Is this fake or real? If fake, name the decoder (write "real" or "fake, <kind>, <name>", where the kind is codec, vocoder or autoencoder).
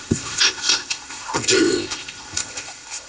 fake, codec, ZipCodec